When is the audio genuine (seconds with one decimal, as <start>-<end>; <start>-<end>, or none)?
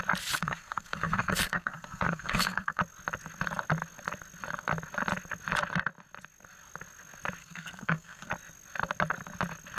0.0-0.4; 2.8-7.4; 8.3-9.8